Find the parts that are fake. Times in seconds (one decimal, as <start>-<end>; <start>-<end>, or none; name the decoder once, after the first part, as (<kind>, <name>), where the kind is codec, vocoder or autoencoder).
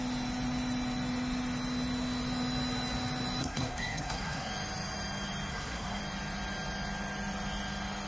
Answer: 3.4-4.5 (codec, SNAC); 5.5-6.0